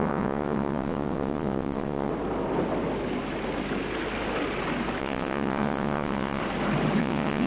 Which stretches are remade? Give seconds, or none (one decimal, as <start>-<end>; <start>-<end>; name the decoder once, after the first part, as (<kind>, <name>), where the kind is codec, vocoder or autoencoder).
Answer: 0.0-2.1 (vocoder, WaveNeXt); 5.0-6.4; 7.0-7.5